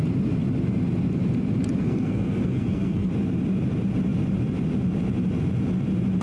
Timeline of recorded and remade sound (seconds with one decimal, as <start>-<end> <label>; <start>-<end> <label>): 0.0-1.8 recorded; 1.8-3.1 remade; 3.1-6.2 recorded